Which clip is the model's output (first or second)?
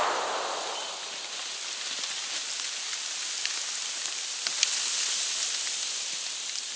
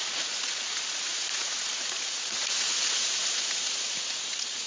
second